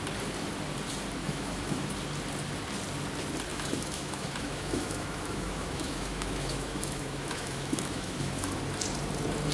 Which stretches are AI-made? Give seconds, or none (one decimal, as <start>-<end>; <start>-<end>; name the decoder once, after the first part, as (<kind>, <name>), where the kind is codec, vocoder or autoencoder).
1.2-1.9 (autoencoder, DAC-VAE); 3.5-8.6